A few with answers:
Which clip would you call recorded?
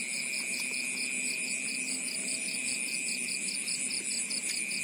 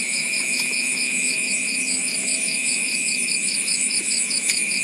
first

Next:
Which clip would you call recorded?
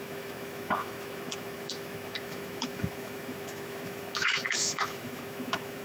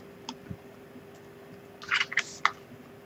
second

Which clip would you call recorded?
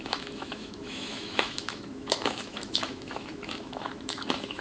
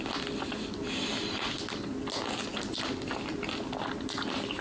second